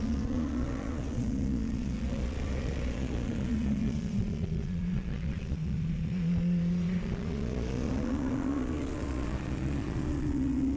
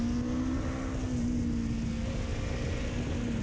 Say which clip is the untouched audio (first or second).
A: second